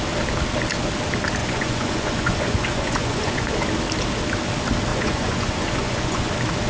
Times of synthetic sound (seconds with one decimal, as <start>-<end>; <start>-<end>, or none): 1.4-3.5; 4.9-6.3